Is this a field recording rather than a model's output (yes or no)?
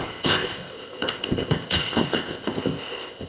no